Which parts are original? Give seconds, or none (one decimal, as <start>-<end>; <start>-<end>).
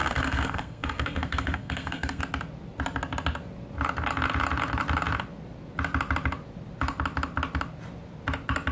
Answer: 2.2-8.7